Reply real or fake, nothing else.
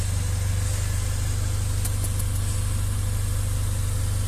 real